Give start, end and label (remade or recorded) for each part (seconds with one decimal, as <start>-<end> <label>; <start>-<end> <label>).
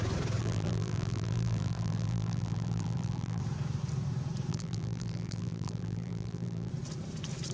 0.0-0.4 recorded; 0.4-3.4 remade; 3.4-4.5 recorded; 4.5-6.7 remade; 6.7-7.5 recorded